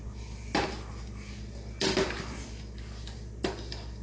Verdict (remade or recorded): recorded